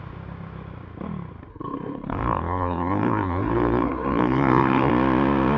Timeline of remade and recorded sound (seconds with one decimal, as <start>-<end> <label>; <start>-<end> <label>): 0.0-1.5 recorded; 1.5-4.9 remade; 4.9-5.6 recorded